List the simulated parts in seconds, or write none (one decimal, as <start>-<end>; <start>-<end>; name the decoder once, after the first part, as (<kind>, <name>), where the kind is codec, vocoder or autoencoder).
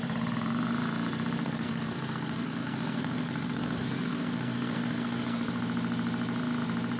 1.4-5.6 (codec, SNAC)